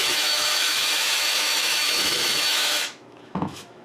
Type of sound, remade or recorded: remade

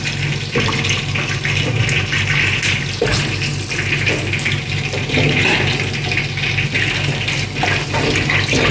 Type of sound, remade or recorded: recorded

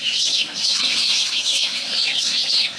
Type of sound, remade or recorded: remade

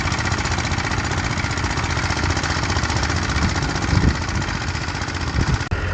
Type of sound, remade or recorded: recorded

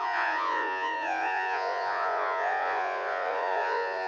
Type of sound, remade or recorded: remade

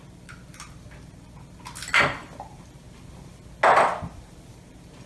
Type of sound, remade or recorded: recorded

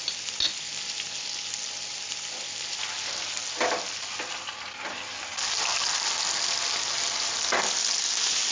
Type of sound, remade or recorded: recorded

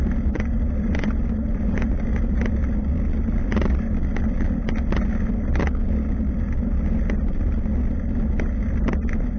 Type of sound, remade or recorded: recorded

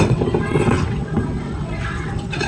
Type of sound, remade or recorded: remade